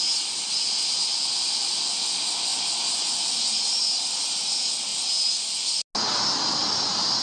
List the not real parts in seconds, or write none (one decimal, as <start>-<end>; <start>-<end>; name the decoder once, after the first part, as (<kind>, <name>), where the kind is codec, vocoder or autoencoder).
none